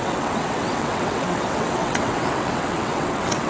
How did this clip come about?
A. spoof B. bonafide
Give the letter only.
A